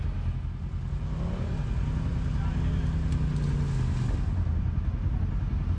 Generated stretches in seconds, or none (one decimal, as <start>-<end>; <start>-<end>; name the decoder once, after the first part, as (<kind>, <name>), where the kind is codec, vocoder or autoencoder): none